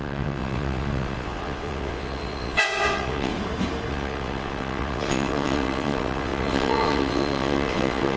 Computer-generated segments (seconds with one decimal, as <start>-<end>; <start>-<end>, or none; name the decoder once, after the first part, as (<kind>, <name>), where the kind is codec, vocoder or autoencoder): 0.0-3.3 (vocoder, WaveNeXt); 3.9-8.2